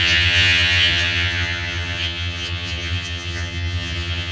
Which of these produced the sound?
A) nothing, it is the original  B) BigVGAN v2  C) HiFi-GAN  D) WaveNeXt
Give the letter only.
C